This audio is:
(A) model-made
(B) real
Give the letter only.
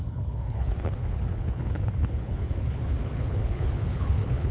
A